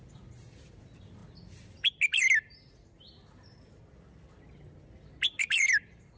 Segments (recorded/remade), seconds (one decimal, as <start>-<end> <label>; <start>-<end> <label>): 0.0-6.2 recorded